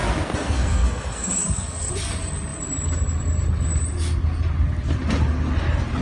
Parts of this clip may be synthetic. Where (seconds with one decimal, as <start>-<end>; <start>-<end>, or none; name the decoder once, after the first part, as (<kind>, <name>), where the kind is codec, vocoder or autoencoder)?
0.0-1.9 (codec, SNAC)